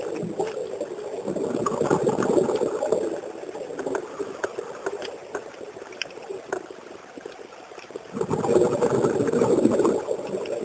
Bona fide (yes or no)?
yes